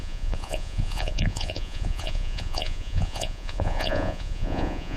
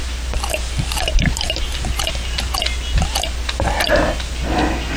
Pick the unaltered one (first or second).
second